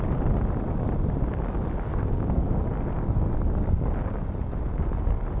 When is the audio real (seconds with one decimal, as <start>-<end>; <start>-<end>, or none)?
0.0-1.9; 2.6-5.4